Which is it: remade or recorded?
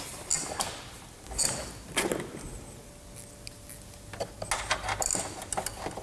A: recorded